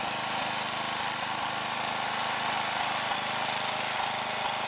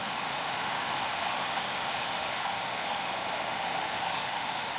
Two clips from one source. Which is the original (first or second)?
first